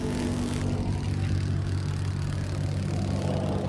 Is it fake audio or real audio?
real